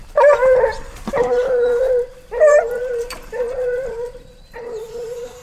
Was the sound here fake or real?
fake